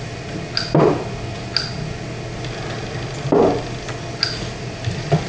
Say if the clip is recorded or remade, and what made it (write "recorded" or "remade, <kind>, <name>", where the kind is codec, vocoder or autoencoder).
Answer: recorded